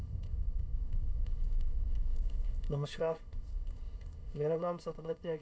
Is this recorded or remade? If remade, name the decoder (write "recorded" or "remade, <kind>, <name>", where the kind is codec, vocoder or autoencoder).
remade, codec, ZipCodec